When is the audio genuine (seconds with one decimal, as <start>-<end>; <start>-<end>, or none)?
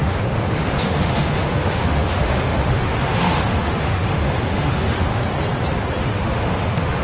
5.2-6.0